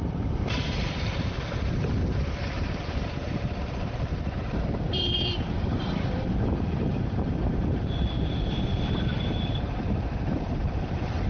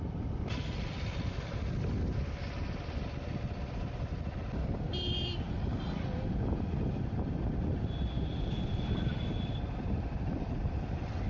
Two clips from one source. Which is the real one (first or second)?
second